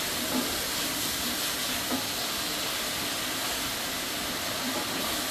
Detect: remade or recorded remade